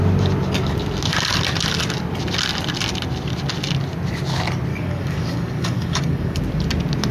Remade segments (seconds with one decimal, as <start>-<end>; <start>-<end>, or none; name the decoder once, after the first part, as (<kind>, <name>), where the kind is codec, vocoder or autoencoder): 4.7-6.4 (codec, DAC)